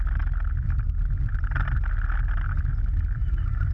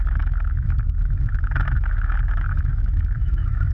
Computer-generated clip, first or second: second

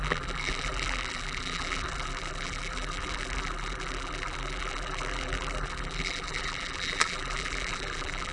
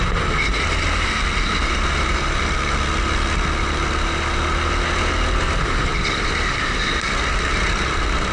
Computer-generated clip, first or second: first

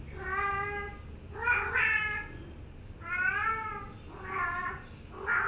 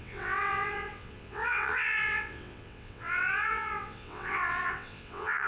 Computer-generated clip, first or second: second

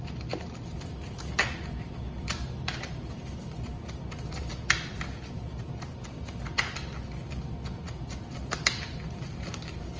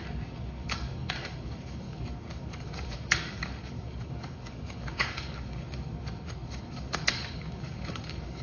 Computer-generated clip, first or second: second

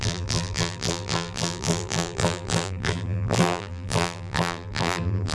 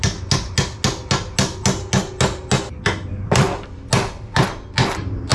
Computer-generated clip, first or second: first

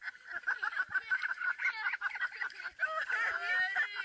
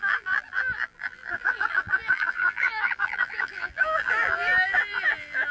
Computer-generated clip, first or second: second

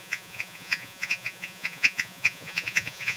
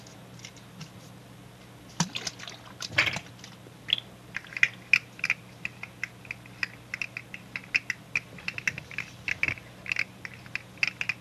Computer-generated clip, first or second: first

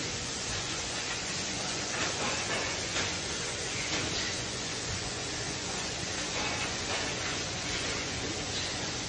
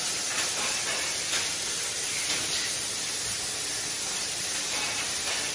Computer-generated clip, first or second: first